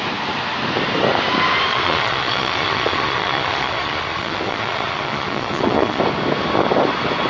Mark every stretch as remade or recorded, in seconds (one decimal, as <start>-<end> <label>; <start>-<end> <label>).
0.0-1.7 recorded; 1.7-6.0 remade; 6.0-7.3 recorded